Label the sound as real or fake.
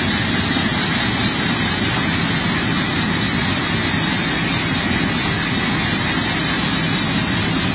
real